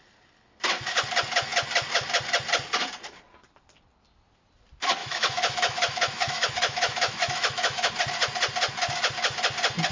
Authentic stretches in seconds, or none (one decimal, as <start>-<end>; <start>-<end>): 0.0-5.0; 7.9-9.9